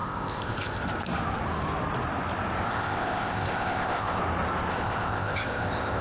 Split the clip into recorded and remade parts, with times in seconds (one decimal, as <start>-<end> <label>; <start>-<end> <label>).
0.0-0.8 remade; 0.8-2.7 recorded; 2.7-4.2 remade; 4.2-4.7 recorded; 4.7-6.0 remade

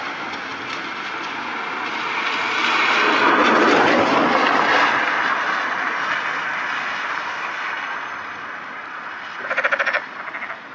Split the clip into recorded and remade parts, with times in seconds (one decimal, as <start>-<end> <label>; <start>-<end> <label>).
0.0-10.7 recorded

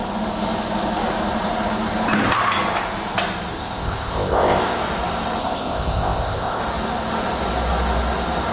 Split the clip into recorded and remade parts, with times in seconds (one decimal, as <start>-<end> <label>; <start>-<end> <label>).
0.0-3.5 recorded; 3.5-4.8 remade; 4.8-5.4 recorded; 5.4-6.6 remade; 6.6-8.5 recorded

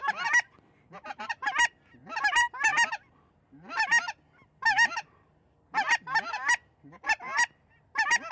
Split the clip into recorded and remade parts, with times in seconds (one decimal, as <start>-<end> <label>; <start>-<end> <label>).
0.0-8.3 recorded

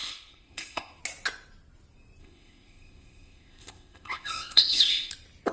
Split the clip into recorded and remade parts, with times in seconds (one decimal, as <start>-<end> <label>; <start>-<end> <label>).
0.0-1.0 remade; 1.0-2.2 recorded; 2.2-5.1 remade; 5.1-5.5 recorded